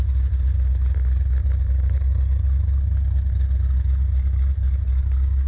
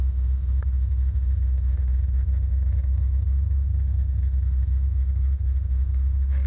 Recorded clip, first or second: first